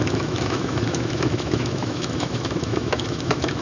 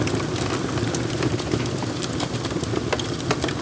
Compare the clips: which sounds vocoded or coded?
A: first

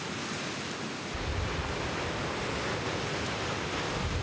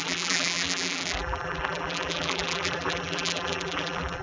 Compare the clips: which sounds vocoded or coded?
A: second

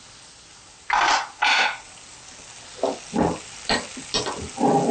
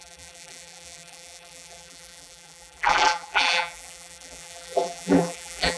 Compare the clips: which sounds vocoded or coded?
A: second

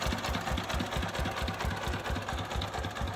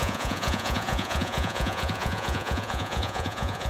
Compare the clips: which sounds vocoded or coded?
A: second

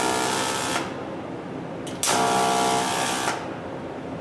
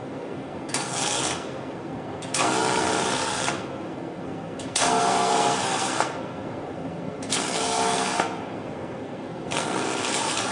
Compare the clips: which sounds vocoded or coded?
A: second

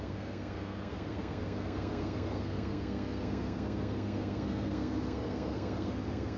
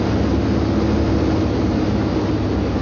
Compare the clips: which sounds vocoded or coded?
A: first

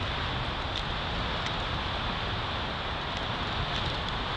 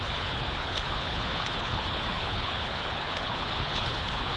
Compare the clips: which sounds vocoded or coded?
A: second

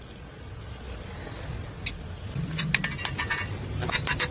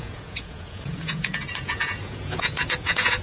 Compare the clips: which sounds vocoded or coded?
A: second